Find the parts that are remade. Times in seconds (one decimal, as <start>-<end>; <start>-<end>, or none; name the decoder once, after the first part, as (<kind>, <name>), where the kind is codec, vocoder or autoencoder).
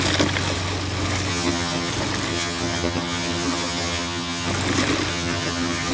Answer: 1.3-1.9 (vocoder, HiFi-GAN); 2.3-4.5; 5.1-5.9